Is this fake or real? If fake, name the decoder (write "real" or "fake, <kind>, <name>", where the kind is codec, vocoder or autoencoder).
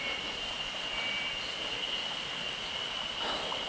real